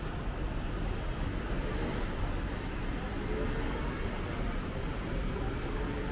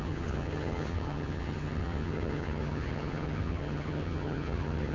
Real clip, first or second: first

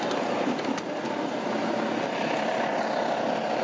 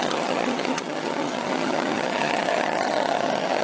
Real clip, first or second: first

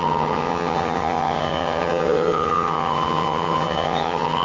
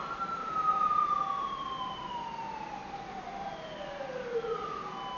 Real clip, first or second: second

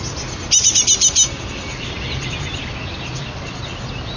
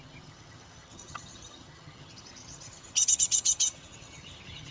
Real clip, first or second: first